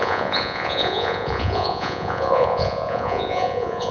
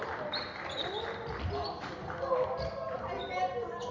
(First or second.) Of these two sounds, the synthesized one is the first